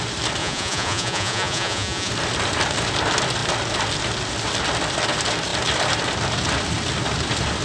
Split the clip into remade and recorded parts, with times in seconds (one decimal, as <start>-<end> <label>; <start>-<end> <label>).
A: 0.0-0.4 recorded; 0.4-2.1 remade; 2.1-7.6 recorded